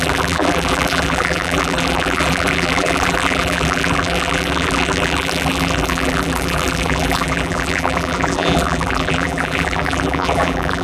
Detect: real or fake fake